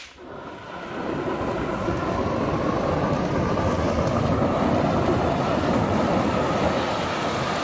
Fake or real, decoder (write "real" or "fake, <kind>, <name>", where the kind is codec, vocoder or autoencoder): real